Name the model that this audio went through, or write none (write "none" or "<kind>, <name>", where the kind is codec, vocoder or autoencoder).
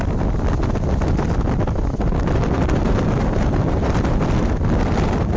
none